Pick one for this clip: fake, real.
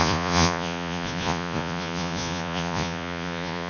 fake